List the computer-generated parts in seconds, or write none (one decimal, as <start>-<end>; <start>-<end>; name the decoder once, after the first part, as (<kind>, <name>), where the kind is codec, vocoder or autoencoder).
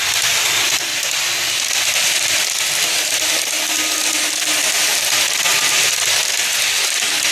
none